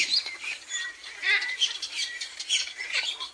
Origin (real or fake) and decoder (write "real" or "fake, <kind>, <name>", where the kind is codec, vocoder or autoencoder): real